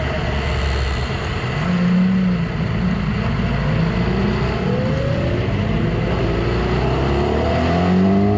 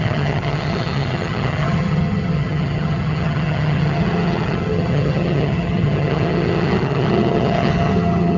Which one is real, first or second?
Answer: first